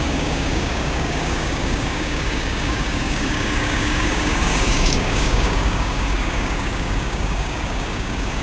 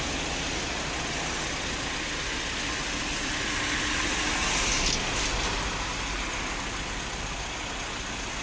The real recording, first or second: second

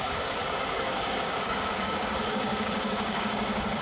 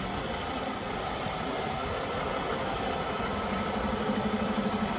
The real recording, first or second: second